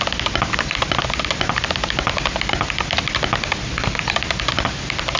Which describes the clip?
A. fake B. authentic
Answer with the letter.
B